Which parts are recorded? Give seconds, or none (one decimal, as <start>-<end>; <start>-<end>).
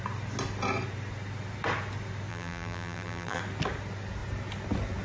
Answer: 0.0-2.3; 3.4-5.0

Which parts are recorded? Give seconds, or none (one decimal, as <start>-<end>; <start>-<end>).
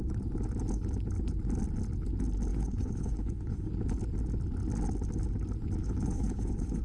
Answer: 0.0-2.5; 3.7-5.8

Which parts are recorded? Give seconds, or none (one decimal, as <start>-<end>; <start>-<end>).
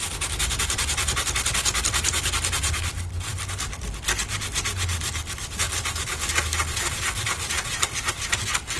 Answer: 0.0-8.8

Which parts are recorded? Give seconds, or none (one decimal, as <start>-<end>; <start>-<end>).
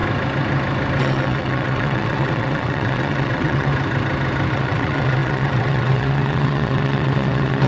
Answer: 0.0-1.0; 3.7-4.5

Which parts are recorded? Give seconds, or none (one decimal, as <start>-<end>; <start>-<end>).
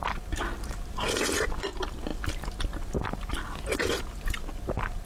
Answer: 0.0-5.1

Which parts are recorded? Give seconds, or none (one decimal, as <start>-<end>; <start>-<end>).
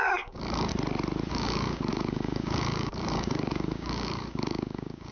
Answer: 0.7-1.3